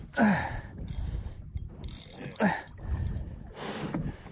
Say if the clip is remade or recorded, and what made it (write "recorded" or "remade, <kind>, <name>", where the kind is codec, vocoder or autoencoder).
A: recorded